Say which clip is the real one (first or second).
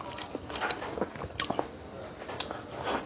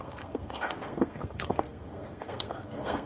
first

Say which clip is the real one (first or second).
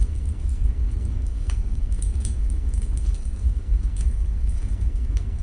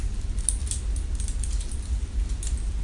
second